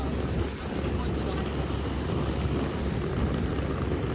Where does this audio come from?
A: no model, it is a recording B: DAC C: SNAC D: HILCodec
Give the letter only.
A